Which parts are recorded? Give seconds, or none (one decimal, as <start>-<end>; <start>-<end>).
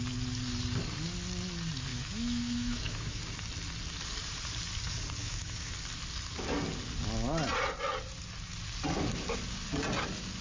0.0-1.9; 3.2-5.2; 5.7-10.4